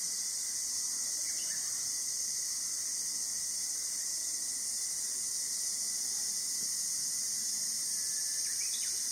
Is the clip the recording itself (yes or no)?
yes